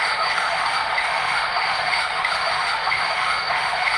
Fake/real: fake